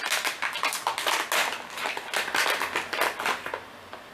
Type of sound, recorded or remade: recorded